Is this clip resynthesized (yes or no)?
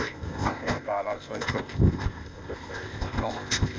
yes